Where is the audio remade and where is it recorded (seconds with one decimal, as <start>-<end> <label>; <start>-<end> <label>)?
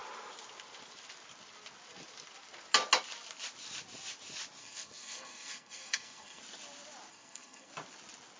0.0-4.6 recorded; 4.6-6.4 remade; 6.4-7.1 recorded; 7.1-7.7 remade; 7.7-8.4 recorded